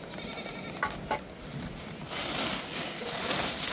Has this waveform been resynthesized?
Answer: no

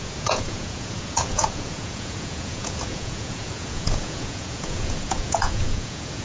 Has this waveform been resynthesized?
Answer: yes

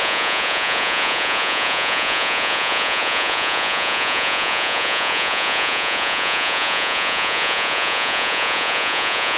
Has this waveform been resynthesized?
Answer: yes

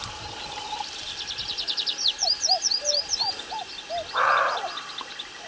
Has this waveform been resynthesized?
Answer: no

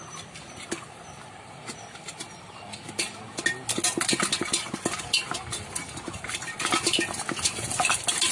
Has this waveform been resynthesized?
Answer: no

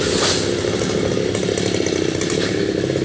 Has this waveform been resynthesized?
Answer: no